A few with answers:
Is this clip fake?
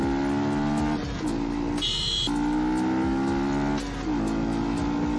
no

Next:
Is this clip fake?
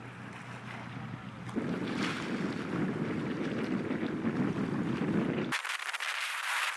no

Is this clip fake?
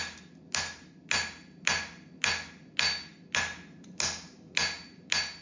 no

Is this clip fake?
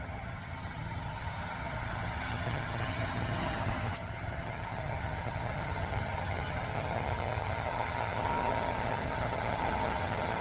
yes